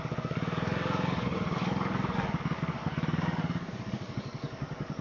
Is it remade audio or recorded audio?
remade